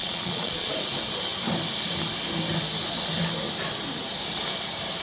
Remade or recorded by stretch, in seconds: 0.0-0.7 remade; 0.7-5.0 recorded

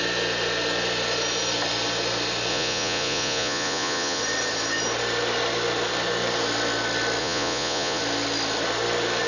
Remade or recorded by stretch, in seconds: 0.0-2.5 recorded; 2.5-4.2 remade; 4.2-7.2 recorded; 7.2-8.0 remade; 8.0-9.3 recorded

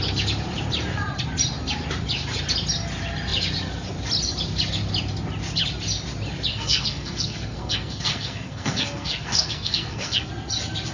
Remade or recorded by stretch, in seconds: 0.0-6.5 recorded; 6.5-10.3 remade; 10.3-10.9 recorded

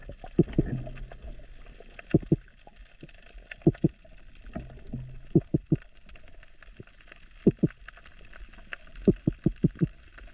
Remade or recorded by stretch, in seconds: 0.0-10.3 recorded

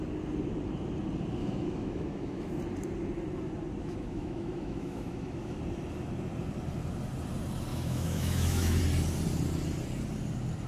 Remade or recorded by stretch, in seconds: 0.0-1.4 recorded; 1.4-2.5 remade; 2.5-3.8 recorded; 3.8-5.6 remade; 5.6-7.7 recorded; 7.7-8.8 remade; 8.8-10.7 recorded

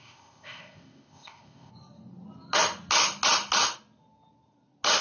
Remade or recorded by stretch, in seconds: 0.0-1.7 remade; 1.7-5.0 recorded

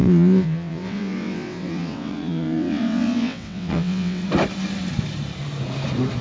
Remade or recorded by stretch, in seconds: 0.0-4.2 remade; 4.2-6.2 recorded

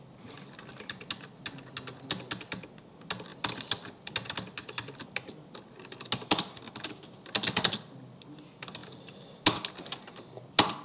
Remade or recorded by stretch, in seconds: 0.0-10.8 recorded